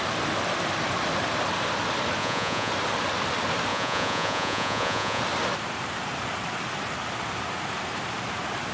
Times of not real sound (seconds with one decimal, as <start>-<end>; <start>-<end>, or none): 2.2-2.7; 3.7-5.2